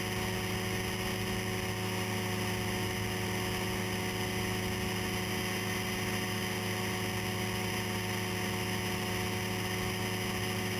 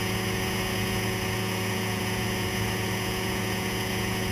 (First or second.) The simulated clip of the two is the second